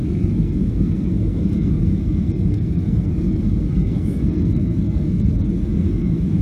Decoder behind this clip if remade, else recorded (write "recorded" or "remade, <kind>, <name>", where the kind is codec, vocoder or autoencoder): remade, codec, SNAC